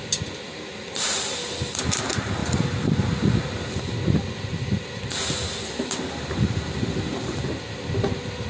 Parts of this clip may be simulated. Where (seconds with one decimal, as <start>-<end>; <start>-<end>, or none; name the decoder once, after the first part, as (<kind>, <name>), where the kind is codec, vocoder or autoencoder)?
none